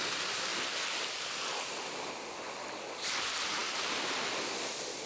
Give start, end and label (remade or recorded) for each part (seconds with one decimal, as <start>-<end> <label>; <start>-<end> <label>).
0.0-5.1 recorded

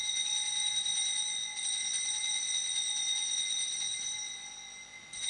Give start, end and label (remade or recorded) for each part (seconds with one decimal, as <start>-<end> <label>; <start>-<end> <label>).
0.0-5.3 recorded

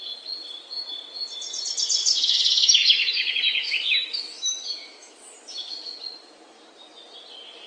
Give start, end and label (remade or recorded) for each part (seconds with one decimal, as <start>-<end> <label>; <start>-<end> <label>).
0.0-2.0 recorded; 2.0-6.0 remade; 6.0-7.7 recorded

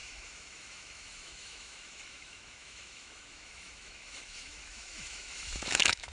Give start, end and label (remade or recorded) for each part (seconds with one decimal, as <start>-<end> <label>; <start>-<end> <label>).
0.0-6.1 remade

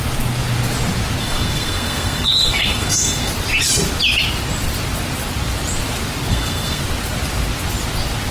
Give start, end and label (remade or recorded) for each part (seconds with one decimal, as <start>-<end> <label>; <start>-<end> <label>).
0.0-1.2 recorded; 1.2-3.3 remade; 3.3-6.3 recorded; 6.3-6.8 remade; 6.8-8.3 recorded

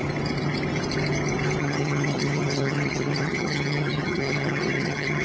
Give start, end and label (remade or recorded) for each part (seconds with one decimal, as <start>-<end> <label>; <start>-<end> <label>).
0.0-1.6 recorded; 1.6-5.2 remade

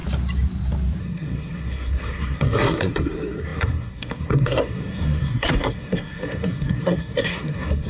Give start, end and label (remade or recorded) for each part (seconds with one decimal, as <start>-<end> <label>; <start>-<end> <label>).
0.0-1.0 recorded; 1.0-7.9 remade